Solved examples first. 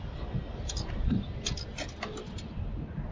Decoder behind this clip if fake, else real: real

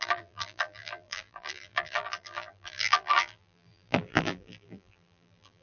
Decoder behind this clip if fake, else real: fake, vocoder, BigVGAN v2